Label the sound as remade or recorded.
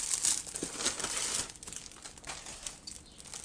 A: recorded